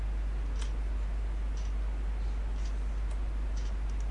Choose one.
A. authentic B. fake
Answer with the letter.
A